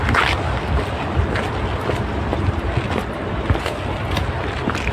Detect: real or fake real